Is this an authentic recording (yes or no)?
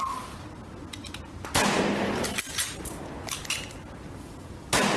yes